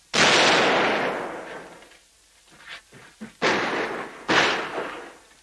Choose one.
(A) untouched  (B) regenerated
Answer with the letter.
A